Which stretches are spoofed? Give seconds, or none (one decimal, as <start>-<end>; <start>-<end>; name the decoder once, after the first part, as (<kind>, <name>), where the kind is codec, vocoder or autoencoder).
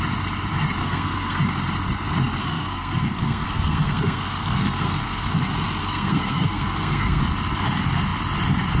0.8-1.4 (codec, SNAC); 2.4-5.3; 5.8-7.2